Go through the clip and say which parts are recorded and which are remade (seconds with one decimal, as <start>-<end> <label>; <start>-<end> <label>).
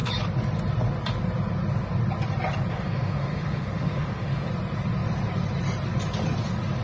0.0-2.7 recorded; 2.7-4.5 remade; 4.5-6.8 recorded